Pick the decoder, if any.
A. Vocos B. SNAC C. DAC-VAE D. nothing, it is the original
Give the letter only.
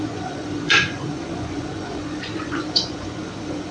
A